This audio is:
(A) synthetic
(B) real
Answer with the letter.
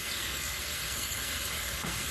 A